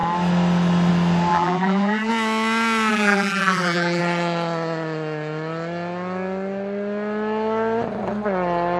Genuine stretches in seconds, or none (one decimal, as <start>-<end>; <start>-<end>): 0.0-1.3; 2.1-2.9; 4.0-8.8